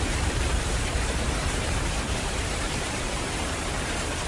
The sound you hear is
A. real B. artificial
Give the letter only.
B